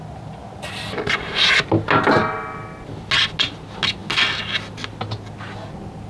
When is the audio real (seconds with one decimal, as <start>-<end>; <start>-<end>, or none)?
0.0-0.4; 1.5-6.1